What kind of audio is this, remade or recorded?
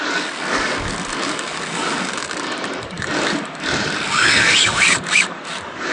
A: remade